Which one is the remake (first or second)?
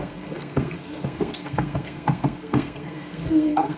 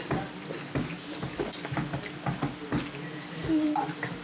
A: first